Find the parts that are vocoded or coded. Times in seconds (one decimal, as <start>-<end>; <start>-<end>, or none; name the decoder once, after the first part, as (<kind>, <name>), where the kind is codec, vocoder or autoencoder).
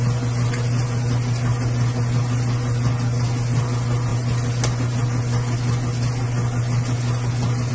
none